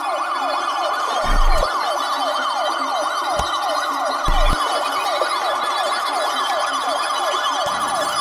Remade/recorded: remade